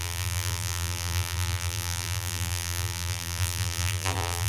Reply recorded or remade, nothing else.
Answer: remade